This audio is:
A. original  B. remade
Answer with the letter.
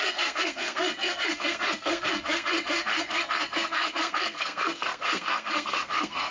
B